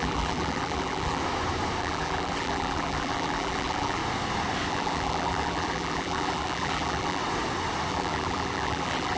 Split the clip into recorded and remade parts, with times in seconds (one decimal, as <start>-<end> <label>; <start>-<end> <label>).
0.0-1.2 remade; 1.2-1.8 recorded; 1.8-4.0 remade; 4.0-4.7 recorded; 4.7-7.2 remade; 7.2-7.9 recorded; 7.9-9.2 remade